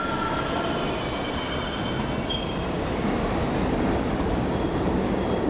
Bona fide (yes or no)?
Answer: yes